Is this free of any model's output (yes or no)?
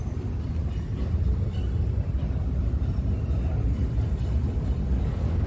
yes